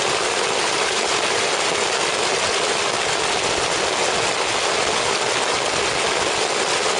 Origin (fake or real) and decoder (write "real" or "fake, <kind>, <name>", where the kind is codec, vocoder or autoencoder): real